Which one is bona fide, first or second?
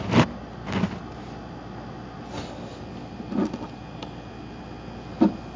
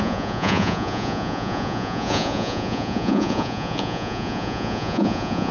first